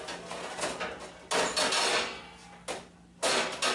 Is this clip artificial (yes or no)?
no